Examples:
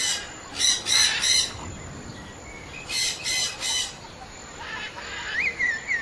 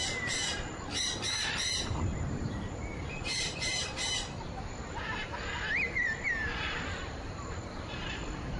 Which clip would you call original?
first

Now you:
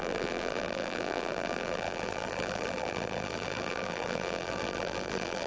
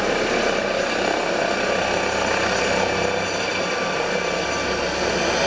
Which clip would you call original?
second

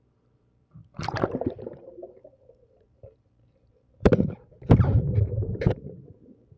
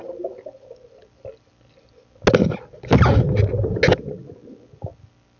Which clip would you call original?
second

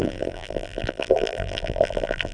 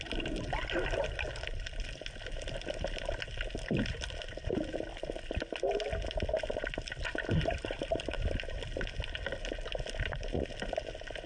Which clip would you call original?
second